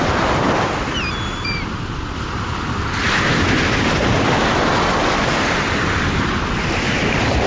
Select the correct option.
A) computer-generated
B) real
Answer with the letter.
B